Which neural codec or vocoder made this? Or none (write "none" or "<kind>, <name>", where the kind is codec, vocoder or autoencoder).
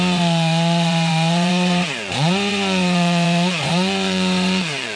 vocoder, Vocos